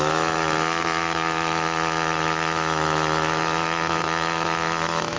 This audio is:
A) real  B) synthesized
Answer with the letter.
B